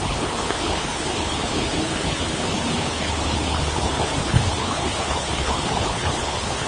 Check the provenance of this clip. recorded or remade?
remade